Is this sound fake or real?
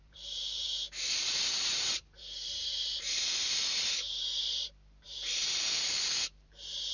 fake